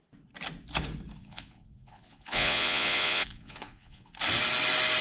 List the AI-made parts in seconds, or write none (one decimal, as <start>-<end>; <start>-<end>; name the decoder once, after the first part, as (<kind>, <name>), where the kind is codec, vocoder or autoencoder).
1.2-4.1 (vocoder, Vocos)